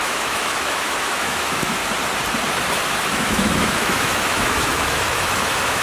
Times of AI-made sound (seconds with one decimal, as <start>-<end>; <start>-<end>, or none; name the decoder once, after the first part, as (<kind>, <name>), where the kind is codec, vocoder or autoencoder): 0.0-1.8 (autoencoder, DAC-VAE); 3.1-5.8